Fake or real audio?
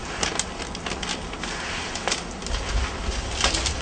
real